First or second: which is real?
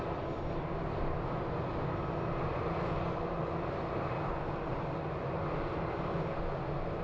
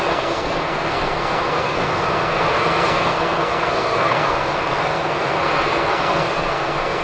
first